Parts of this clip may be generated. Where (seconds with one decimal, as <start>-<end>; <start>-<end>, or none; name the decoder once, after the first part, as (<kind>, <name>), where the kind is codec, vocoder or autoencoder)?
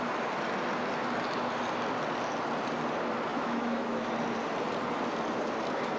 3.3-4.1 (autoencoder, DAC-VAE)